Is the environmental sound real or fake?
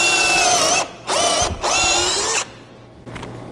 real